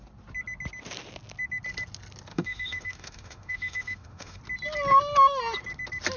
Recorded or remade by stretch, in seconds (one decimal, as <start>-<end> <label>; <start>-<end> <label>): 0.0-2.3 recorded; 2.3-4.4 remade; 4.4-6.2 recorded